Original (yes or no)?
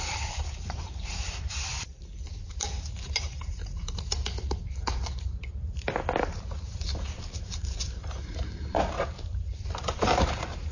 no